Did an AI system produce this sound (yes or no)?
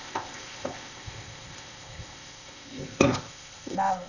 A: yes